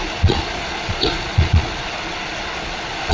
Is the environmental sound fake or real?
fake